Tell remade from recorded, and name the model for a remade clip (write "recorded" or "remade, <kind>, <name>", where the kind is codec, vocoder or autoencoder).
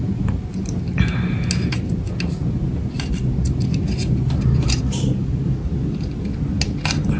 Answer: recorded